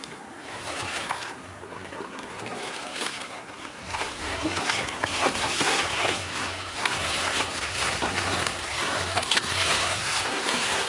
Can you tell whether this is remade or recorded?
remade